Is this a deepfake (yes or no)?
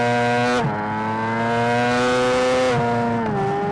no